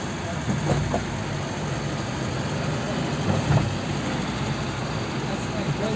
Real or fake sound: real